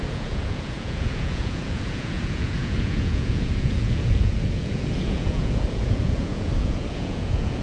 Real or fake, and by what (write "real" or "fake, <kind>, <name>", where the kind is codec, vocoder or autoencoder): fake, vocoder, Vocos